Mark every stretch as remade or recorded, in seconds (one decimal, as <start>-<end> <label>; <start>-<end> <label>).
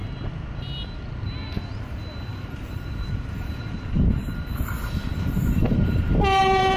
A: 0.0-2.3 recorded; 2.3-6.8 remade